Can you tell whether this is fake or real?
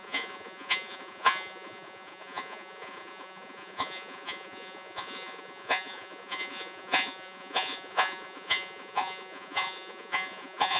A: fake